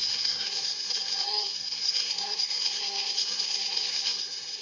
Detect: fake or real fake